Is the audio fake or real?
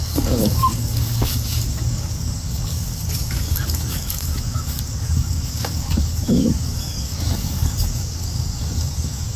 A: fake